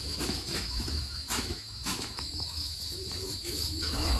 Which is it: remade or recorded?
remade